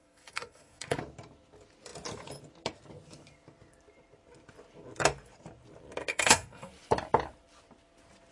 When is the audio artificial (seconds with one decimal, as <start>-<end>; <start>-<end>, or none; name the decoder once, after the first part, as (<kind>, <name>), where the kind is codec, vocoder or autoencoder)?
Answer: 0.0-1.0 (codec, SNAC); 6.1-6.7